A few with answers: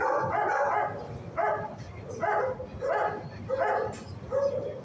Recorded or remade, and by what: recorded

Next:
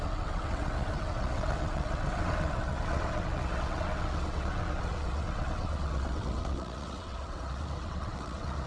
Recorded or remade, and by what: remade, vocoder, WaveNeXt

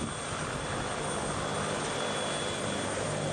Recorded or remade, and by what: recorded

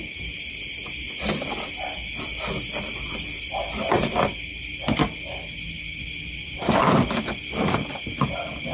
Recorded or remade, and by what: recorded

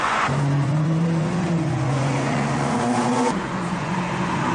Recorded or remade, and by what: remade, vocoder, Vocos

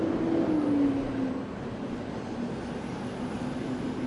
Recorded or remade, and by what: recorded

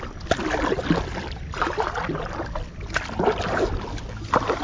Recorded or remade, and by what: recorded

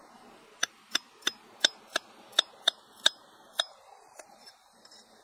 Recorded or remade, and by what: recorded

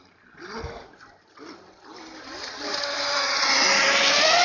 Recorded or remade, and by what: recorded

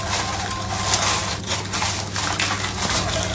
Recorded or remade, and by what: recorded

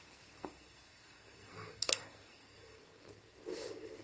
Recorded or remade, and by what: remade, codec, SNAC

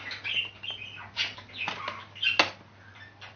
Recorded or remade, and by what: recorded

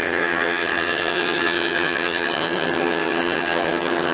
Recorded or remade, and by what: remade, vocoder, HiFi-GAN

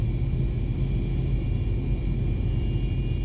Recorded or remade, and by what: recorded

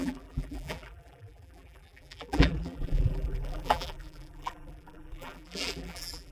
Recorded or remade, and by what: remade, vocoder, BigVGAN v2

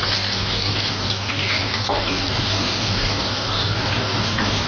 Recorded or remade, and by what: remade, codec, DAC